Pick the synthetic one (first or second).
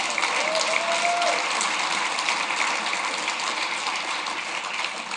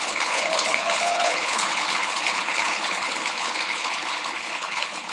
second